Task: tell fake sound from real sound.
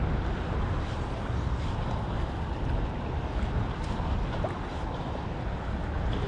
real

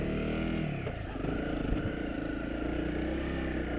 real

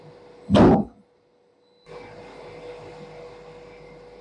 real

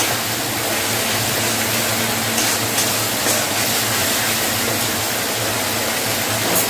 real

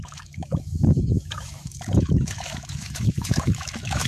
fake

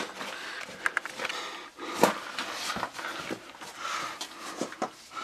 real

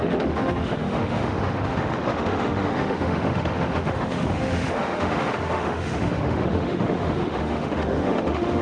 fake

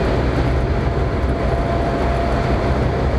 real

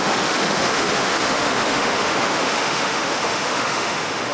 fake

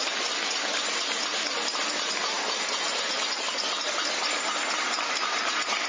real